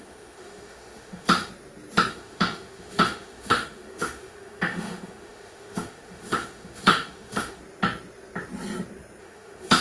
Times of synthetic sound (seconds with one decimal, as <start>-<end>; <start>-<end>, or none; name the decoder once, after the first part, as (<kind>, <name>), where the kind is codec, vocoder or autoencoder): 0.0-1.5 (autoencoder, DAC-VAE); 2.1-7.6; 9.2-9.8